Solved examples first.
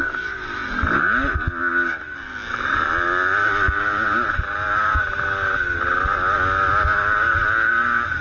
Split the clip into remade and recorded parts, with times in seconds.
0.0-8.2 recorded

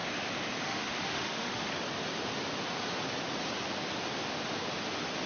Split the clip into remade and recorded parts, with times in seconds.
0.0-0.6 recorded; 0.6-1.7 remade; 1.7-5.3 recorded

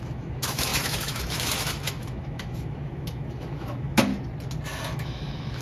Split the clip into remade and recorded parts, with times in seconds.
0.0-4.1 remade; 4.1-4.9 recorded; 4.9-5.6 remade